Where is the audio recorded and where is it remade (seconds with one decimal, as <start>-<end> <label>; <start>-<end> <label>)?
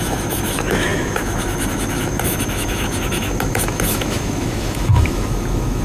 0.0-5.8 remade